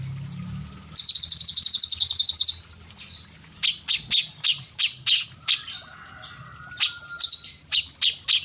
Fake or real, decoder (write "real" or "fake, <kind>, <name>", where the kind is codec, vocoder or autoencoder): real